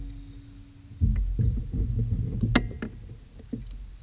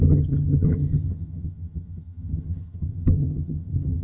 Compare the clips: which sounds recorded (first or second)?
first